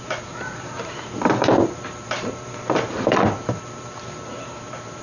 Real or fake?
fake